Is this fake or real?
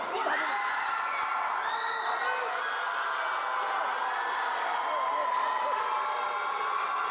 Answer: real